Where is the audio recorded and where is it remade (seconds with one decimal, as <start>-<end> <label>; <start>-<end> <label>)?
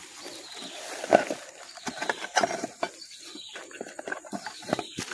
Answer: 0.0-5.1 recorded